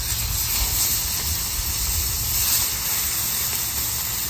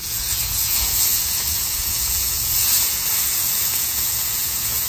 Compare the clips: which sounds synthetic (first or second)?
second